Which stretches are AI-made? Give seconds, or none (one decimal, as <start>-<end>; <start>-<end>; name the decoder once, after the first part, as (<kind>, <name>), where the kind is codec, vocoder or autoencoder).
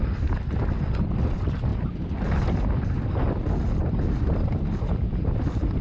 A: none